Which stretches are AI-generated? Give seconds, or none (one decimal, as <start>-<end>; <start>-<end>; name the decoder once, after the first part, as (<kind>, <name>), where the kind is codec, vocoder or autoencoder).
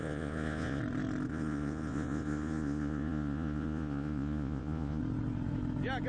0.0-0.8 (vocoder, Vocos); 1.3-5.0